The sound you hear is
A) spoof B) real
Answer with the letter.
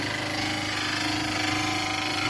B